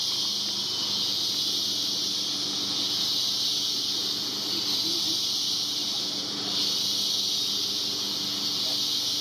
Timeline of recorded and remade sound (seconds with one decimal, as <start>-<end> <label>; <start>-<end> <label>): 0.0-9.2 recorded